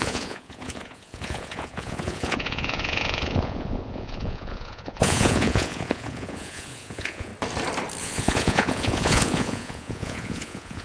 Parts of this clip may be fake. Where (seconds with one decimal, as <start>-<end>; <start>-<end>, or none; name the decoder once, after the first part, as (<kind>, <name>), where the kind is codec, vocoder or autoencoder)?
0.0-7.3 (vocoder, Vocos); 8.0-10.8